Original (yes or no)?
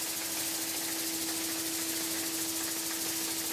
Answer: yes